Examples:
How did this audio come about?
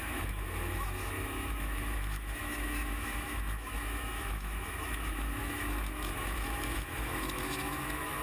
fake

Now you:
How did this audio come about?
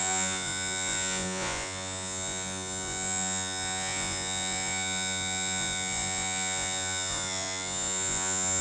fake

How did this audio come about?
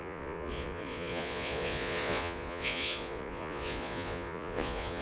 fake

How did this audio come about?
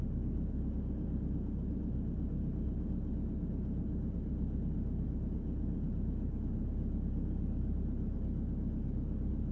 real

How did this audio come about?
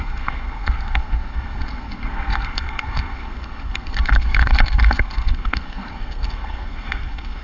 fake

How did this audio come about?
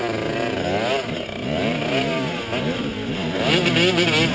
real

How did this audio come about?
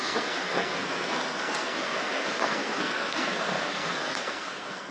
fake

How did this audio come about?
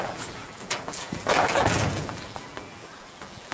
fake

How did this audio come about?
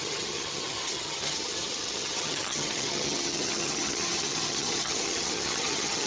fake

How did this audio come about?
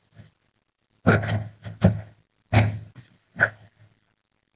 real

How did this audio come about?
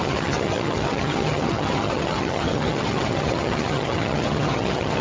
fake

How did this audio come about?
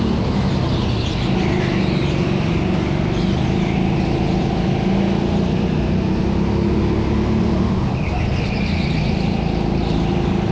real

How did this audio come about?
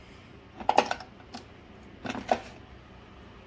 real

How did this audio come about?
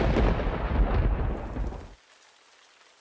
real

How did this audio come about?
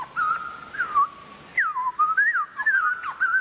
real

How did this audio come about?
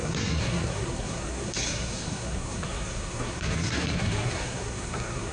fake